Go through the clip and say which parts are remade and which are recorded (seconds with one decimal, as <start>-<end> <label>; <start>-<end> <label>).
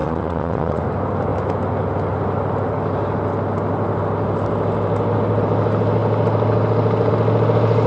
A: 0.0-0.8 remade; 0.8-7.9 recorded